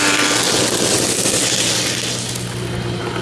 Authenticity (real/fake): real